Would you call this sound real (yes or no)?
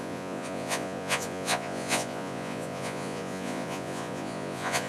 no